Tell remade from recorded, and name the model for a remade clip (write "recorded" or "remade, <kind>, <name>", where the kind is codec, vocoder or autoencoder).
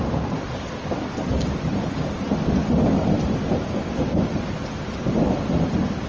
recorded